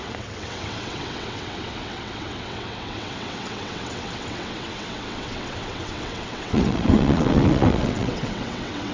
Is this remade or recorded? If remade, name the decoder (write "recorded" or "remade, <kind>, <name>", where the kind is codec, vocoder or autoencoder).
remade, vocoder, WaveNeXt